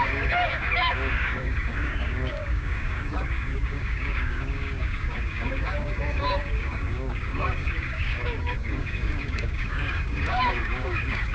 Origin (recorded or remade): remade